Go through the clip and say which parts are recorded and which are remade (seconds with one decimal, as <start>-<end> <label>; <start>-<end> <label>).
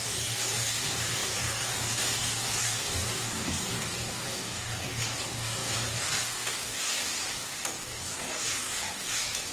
0.0-9.5 remade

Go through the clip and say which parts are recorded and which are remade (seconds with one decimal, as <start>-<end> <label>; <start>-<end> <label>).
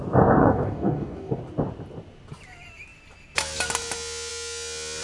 0.0-0.4 recorded; 0.4-1.4 remade; 1.4-5.0 recorded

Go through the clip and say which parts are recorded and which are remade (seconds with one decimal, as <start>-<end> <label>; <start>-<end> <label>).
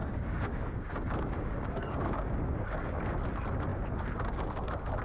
0.0-3.0 remade; 3.0-5.0 recorded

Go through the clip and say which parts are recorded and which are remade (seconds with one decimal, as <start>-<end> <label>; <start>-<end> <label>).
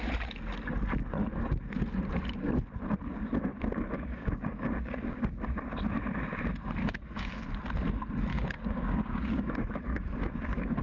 0.0-3.5 recorded; 3.5-5.4 remade; 5.4-6.8 recorded; 6.8-7.6 remade; 7.6-8.3 recorded; 8.3-10.8 remade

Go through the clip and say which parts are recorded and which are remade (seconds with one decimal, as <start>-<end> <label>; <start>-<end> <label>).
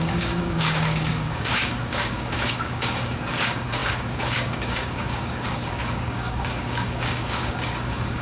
0.0-8.2 remade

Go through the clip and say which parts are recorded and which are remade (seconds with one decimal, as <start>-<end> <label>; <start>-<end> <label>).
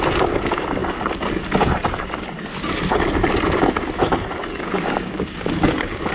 0.0-4.5 recorded; 4.5-6.1 remade